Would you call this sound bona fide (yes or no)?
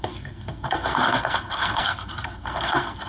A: no